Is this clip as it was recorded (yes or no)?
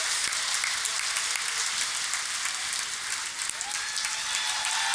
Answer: yes